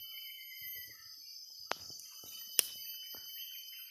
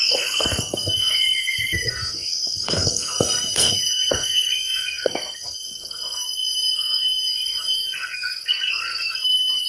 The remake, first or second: second